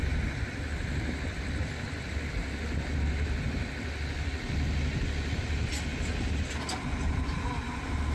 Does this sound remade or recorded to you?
recorded